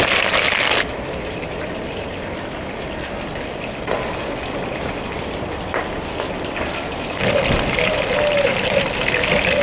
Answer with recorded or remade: recorded